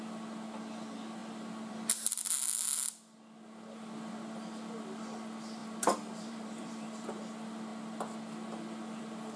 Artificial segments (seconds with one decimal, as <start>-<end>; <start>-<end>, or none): 5.6-7.2